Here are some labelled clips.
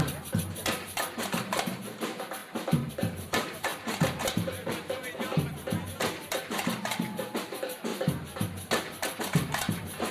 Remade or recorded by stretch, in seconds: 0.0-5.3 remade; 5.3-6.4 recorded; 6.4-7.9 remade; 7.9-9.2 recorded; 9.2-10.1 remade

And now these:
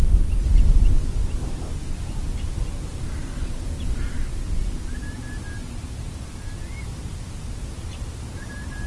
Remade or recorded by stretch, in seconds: 0.0-1.4 recorded; 1.4-4.1 remade; 4.1-5.6 recorded; 5.6-6.8 remade; 6.8-8.9 recorded

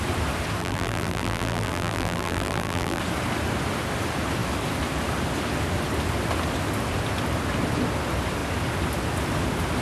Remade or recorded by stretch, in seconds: 0.0-0.6 recorded; 0.6-3.0 remade; 3.0-9.8 recorded

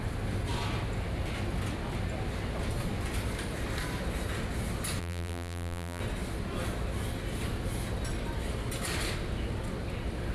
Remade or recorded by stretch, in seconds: 0.0-5.0 recorded; 5.0-6.0 remade; 6.0-10.3 recorded